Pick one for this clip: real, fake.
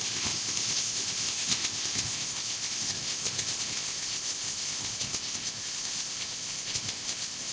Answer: fake